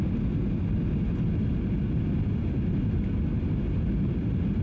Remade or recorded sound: recorded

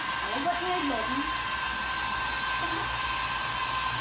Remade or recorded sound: recorded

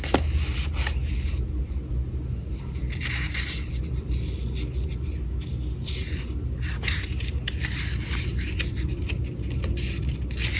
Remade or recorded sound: recorded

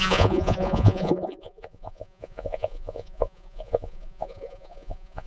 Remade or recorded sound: remade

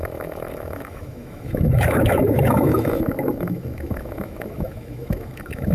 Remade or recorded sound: remade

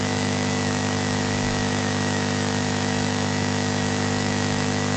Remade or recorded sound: remade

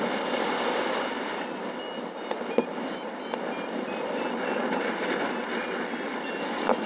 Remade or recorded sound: recorded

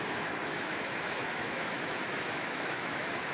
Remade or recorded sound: remade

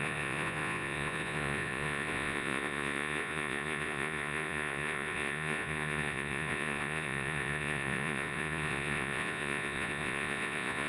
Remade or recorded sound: remade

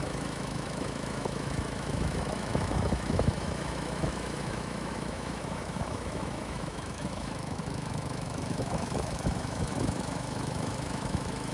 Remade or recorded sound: remade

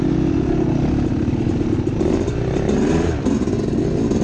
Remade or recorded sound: recorded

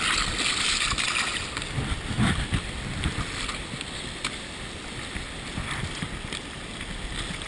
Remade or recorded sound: recorded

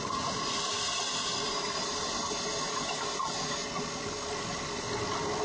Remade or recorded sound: recorded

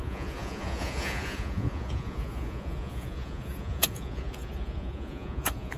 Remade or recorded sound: remade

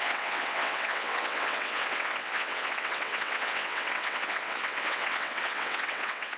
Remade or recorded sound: remade